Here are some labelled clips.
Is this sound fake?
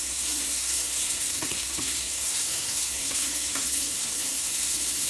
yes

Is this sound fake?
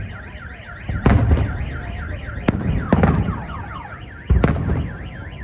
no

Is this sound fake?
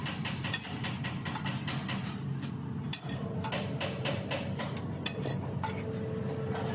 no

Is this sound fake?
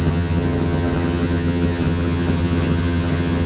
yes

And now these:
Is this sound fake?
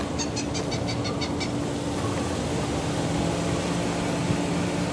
no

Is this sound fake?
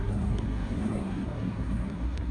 yes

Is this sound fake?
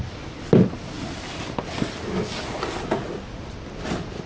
no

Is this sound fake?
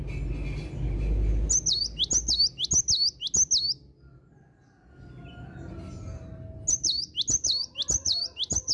no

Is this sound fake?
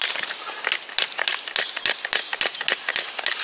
no